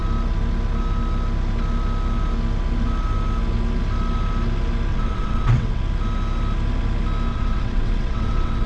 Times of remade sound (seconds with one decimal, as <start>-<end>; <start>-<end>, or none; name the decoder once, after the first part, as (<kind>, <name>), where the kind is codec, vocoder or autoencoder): 4.9-5.8 (vocoder, WaveNeXt); 7.3-8.7